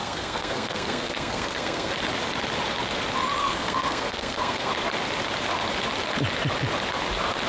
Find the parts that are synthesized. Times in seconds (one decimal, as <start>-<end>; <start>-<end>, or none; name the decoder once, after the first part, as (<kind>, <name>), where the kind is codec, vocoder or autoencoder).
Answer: 0.0-1.9 (codec, SNAC); 3.4-4.7